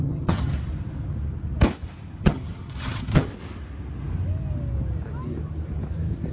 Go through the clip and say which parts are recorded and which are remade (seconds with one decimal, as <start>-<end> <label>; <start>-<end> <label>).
0.0-0.5 remade; 0.5-2.2 recorded; 2.2-3.3 remade; 3.3-6.3 recorded